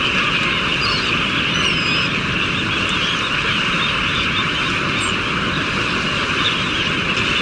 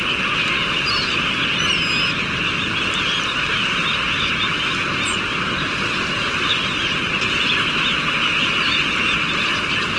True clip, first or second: second